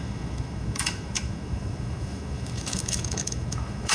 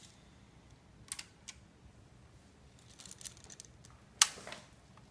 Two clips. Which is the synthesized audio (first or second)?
first